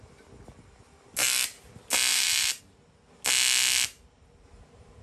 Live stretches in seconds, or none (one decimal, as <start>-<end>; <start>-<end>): 0.0-2.1; 2.6-5.0